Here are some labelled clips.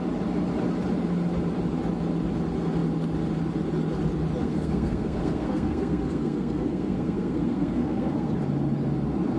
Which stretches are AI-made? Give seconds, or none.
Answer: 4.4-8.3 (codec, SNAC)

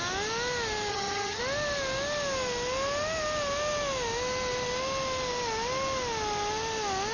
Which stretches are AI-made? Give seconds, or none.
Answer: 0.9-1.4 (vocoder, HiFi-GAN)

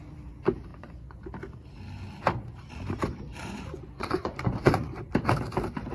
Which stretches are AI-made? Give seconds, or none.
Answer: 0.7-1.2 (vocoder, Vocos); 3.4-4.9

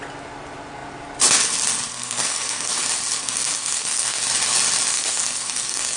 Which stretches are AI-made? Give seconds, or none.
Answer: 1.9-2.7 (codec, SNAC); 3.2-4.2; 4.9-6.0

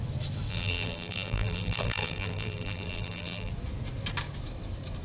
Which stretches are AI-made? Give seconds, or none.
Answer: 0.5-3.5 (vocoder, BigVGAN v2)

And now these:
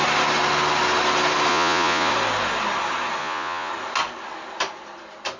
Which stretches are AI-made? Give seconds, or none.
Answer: 1.5-2.1 (vocoder, Vocos); 3.2-3.7

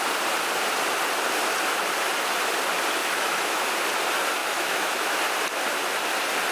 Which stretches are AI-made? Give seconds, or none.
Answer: 3.0-3.7 (autoencoder, DAC-VAE); 4.4-5.2

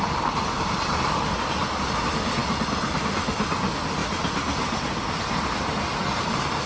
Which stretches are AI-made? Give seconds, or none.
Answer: none